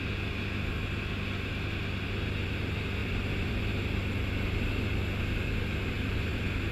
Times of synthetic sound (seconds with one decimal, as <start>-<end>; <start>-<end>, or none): 3.0-3.6